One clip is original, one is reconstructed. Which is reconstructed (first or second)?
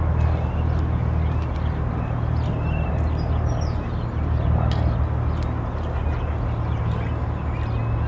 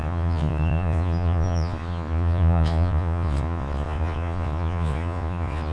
second